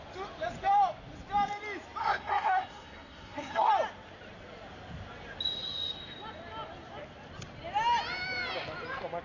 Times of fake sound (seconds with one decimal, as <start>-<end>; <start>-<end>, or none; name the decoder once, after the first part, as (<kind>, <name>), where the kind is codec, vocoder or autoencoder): 2.0-3.7 (codec, SNAC)